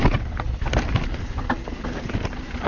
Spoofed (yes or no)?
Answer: no